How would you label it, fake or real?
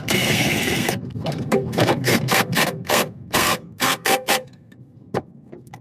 fake